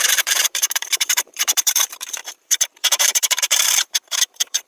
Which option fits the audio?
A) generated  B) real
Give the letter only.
A